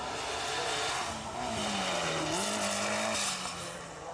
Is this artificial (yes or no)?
no